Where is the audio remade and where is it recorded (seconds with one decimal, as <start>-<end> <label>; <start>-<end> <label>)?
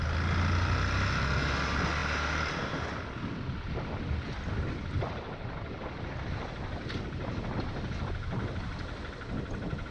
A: 0.0-9.9 recorded